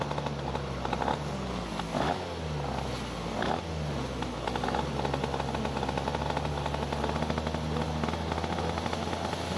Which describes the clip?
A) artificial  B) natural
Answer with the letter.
B